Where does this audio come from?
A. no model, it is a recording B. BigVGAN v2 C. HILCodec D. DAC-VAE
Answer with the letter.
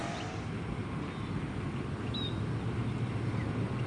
A